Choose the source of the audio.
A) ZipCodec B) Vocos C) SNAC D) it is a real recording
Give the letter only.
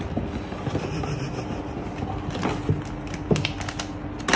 D